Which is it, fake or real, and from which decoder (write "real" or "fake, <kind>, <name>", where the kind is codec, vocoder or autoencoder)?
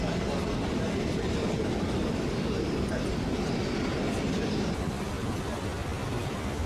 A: real